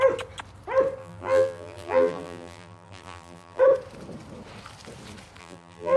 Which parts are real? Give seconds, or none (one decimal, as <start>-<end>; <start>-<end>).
0.0-1.0; 3.6-5.4